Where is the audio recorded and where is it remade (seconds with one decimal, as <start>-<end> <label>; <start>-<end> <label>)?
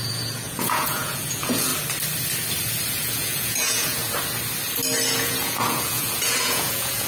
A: 0.0-1.7 remade; 1.7-2.9 recorded; 2.9-4.0 remade; 4.0-5.1 recorded; 5.1-7.1 remade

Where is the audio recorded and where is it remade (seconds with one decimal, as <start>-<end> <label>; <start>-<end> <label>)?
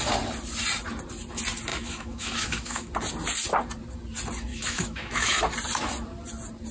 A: 0.0-1.7 recorded; 1.7-2.9 remade; 2.9-4.5 recorded; 4.5-5.4 remade; 5.4-6.7 recorded